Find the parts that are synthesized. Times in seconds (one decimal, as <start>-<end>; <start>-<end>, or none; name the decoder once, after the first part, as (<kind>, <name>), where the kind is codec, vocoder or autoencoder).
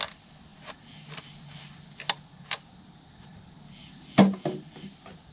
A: none